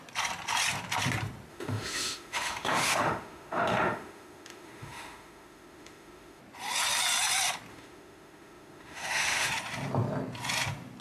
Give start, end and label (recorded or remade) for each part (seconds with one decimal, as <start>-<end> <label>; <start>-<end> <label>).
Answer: 0.0-1.5 recorded; 1.5-6.4 remade; 6.4-7.7 recorded; 7.7-9.5 remade; 9.5-11.0 recorded